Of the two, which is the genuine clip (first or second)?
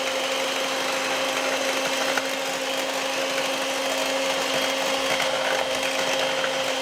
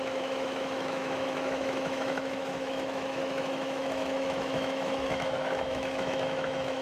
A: first